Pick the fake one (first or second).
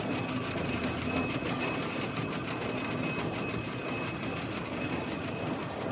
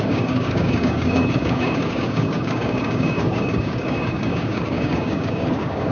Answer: second